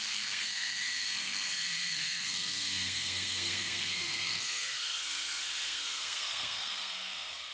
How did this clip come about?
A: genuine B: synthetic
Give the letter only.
B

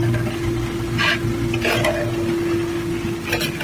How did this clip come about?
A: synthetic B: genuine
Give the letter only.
B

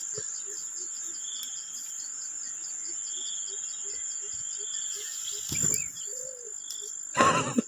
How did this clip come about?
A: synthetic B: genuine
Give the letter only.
B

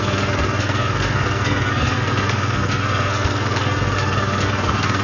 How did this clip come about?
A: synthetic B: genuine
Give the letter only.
A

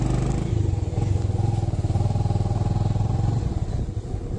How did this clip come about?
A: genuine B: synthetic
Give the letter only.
A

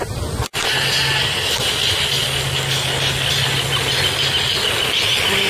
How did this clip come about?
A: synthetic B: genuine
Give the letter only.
B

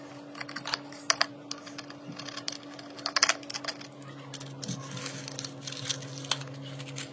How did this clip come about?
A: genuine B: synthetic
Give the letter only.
A